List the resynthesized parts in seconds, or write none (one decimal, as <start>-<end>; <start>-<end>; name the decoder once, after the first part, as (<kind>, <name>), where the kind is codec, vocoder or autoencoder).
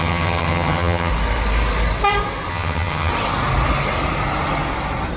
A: 0.0-1.1 (vocoder, HiFi-GAN); 2.5-3.1